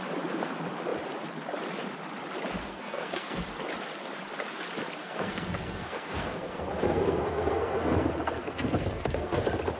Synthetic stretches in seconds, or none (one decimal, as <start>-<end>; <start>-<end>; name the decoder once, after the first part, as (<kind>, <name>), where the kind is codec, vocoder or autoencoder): 2.6-3.4 (codec, SNAC); 5.0-9.4